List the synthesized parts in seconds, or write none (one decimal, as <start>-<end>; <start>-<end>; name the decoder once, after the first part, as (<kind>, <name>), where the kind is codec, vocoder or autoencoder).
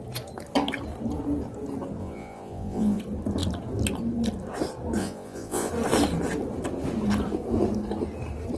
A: 2.0-3.0 (vocoder, Vocos); 5.0-5.7